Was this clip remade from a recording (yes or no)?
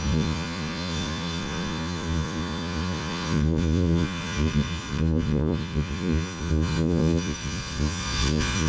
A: yes